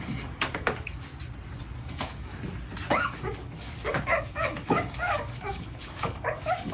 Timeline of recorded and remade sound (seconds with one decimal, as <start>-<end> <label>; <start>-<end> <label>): 0.0-1.1 remade; 1.1-1.8 recorded; 1.8-2.3 remade; 2.3-2.9 recorded; 2.9-6.7 remade